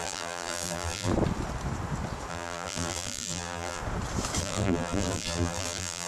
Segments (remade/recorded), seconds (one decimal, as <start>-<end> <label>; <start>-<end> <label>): 0.0-1.1 remade; 1.1-2.3 recorded; 2.3-3.8 remade; 3.8-4.4 recorded; 4.4-6.1 remade